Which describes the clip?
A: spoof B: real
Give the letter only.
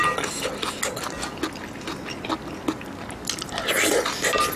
B